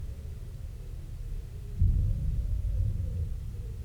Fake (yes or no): no